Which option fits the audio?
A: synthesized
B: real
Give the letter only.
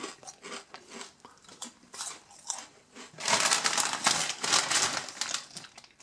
B